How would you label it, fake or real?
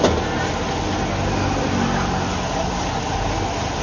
real